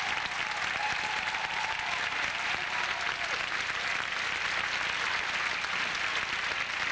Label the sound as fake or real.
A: real